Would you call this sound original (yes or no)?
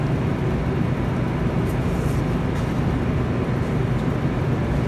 yes